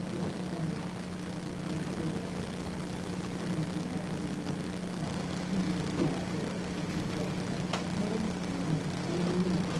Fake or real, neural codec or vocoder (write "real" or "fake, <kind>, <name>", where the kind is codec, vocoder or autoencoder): real